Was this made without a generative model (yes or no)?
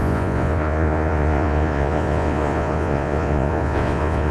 no